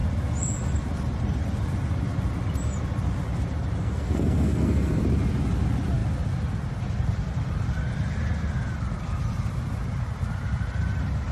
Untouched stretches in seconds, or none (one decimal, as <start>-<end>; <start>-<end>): 0.0-3.8; 5.0-11.3